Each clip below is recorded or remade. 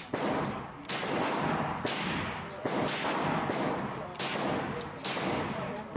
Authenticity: recorded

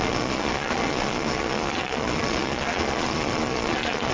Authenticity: remade